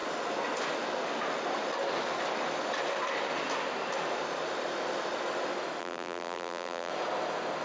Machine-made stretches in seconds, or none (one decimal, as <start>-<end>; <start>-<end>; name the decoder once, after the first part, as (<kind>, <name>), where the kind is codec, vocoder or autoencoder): 5.8-6.9 (vocoder, BigVGAN v2)